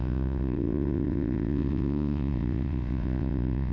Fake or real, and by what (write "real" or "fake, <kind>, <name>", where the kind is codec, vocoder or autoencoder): fake, vocoder, WaveNeXt